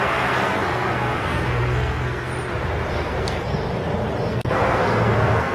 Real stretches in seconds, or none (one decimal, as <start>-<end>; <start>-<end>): 2.3-2.9; 3.6-4.3